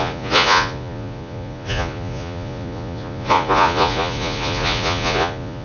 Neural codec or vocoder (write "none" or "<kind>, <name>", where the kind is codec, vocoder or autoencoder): vocoder, Vocos